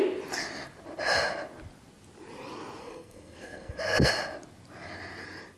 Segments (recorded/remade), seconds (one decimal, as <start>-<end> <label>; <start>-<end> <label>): 0.0-2.8 recorded; 2.8-4.1 remade; 4.1-5.6 recorded